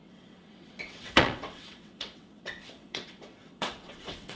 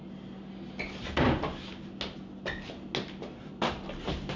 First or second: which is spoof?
first